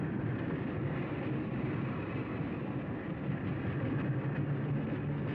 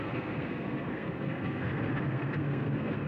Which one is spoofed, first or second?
second